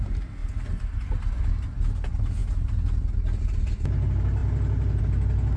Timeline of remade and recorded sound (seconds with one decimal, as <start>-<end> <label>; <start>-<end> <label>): 0.0-5.6 recorded